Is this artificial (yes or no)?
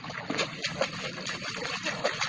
no